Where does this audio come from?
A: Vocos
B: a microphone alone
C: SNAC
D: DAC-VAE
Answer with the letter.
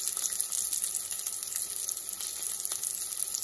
B